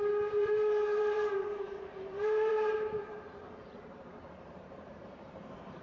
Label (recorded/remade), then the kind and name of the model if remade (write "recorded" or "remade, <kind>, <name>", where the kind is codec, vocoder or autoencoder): remade, vocoder, BigVGAN v2